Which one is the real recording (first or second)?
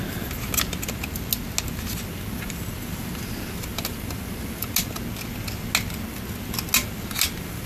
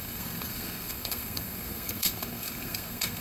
first